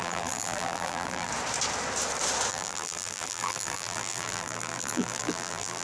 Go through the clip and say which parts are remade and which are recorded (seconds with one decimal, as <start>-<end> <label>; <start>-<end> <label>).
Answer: 0.0-1.3 remade; 1.3-2.5 recorded; 2.5-5.8 remade